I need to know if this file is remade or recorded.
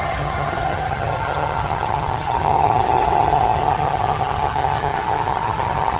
remade